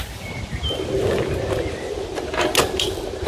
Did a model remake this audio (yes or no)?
no